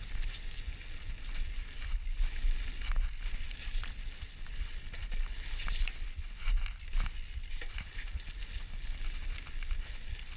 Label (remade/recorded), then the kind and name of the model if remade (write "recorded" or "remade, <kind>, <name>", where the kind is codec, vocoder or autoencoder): recorded